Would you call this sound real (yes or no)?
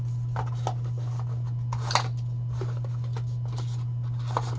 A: yes